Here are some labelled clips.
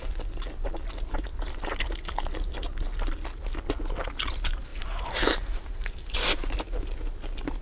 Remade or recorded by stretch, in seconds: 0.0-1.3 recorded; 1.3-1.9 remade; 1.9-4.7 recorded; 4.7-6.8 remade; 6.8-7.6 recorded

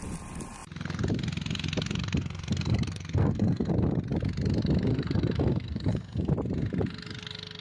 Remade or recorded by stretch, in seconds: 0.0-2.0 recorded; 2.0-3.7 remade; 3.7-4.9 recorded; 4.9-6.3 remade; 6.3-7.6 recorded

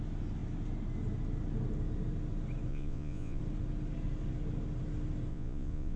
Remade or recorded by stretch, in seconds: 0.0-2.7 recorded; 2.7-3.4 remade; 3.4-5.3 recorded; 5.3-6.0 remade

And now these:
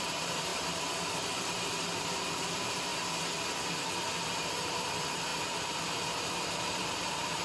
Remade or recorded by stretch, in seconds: 0.0-2.9 remade; 2.9-4.2 recorded; 4.2-7.4 remade

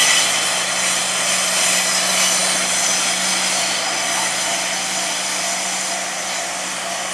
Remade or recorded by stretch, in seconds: 0.0-7.1 recorded

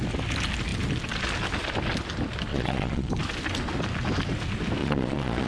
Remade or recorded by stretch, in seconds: 0.0-2.5 recorded; 2.5-3.1 remade; 3.1-4.8 recorded; 4.8-5.5 remade

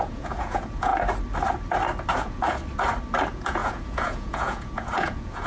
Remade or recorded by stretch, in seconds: 0.0-0.9 remade; 0.9-2.1 recorded; 2.1-2.6 remade; 2.6-3.2 recorded; 3.2-5.5 remade

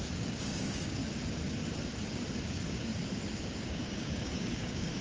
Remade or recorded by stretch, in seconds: 0.0-1.0 remade; 1.0-2.4 recorded; 2.4-2.9 remade; 2.9-3.4 recorded; 3.4-5.0 remade